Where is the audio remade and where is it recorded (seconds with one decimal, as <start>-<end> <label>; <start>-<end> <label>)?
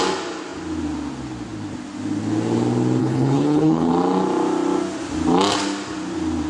0.0-3.0 recorded; 3.0-3.9 remade; 3.9-6.5 recorded